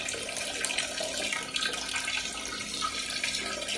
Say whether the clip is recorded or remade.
recorded